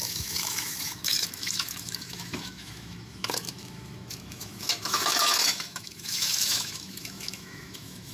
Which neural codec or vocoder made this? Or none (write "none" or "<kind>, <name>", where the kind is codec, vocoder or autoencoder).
autoencoder, DAC-VAE